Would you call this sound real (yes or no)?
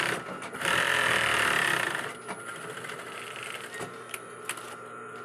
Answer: yes